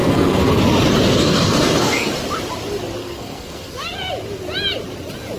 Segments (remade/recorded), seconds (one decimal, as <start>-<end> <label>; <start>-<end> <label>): 0.0-0.6 remade; 0.6-1.2 recorded; 1.2-2.1 remade; 2.1-3.0 recorded; 3.0-3.7 remade; 3.7-5.4 recorded